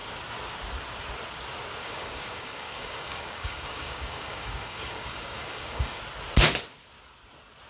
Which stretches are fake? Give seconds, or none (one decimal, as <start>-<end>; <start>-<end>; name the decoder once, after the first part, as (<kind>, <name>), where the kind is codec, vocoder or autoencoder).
1.8-6.0 (codec, DAC)